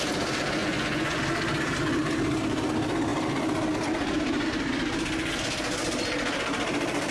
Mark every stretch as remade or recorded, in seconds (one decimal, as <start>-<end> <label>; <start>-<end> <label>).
0.0-0.6 recorded; 0.6-1.2 remade; 1.2-7.1 recorded